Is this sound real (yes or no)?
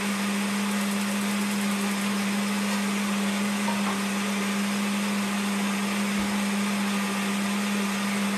yes